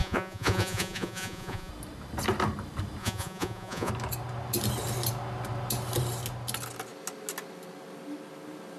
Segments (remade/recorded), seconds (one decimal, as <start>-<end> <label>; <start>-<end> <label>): 0.0-1.7 remade; 1.7-3.0 recorded; 3.0-3.9 remade; 3.9-8.8 recorded